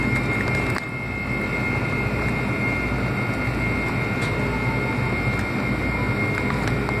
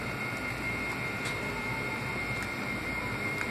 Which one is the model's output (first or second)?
second